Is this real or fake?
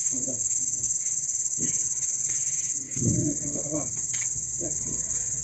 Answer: fake